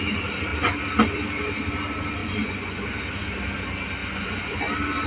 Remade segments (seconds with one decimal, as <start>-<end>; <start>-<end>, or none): 2.2-2.8; 4.0-4.6